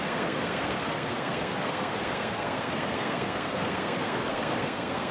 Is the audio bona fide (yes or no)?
no